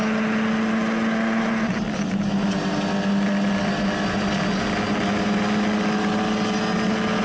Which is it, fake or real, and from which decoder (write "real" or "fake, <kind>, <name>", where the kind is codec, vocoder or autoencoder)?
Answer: real